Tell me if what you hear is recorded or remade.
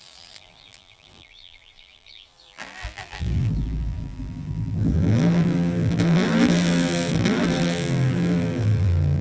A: remade